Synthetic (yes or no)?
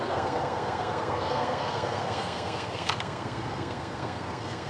yes